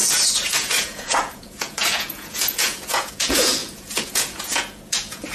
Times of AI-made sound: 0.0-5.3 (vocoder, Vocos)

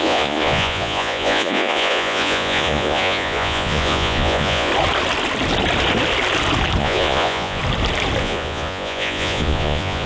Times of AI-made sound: 0.0-4.7 (vocoder, Vocos); 6.8-7.6; 8.2-10.1